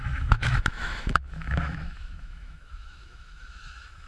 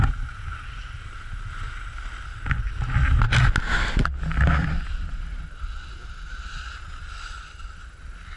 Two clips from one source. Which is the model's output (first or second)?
first